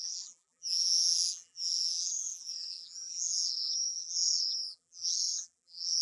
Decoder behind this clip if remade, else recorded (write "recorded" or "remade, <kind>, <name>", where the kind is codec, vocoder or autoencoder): remade, vocoder, BigVGAN v2